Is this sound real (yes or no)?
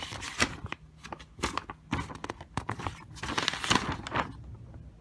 yes